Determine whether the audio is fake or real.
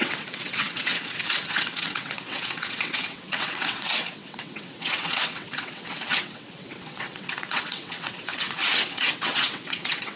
fake